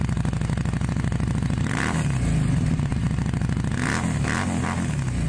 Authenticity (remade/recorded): recorded